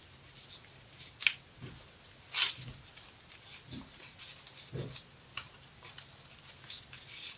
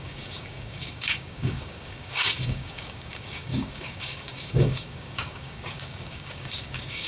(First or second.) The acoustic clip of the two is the first